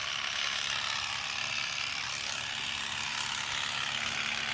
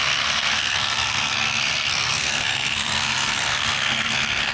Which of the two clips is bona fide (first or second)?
first